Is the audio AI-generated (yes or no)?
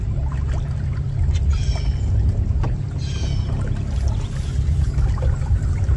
no